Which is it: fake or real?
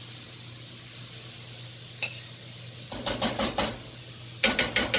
real